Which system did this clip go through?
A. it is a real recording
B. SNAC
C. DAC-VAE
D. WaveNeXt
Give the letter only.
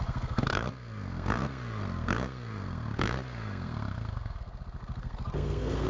B